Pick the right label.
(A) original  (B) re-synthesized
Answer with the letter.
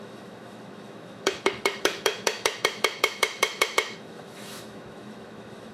B